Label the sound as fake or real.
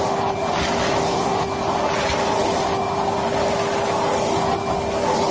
real